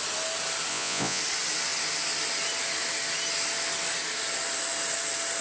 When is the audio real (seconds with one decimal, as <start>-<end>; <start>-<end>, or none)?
0.0-0.7; 1.2-5.4